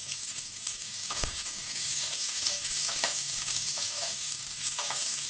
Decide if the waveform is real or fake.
fake